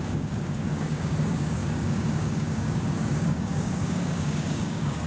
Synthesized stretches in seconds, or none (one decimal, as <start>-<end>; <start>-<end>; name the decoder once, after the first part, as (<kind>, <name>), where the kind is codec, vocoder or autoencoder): 0.0-5.1 (codec, DAC)